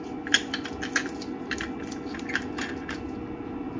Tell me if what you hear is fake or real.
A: real